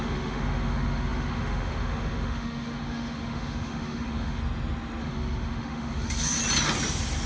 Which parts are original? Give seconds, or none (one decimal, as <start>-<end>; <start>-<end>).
4.4-5.0; 6.4-7.3